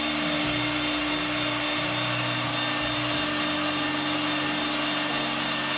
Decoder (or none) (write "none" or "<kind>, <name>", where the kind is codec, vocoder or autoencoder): none